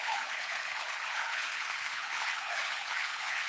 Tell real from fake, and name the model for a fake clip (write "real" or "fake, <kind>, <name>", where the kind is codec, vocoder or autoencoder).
fake, codec, HILCodec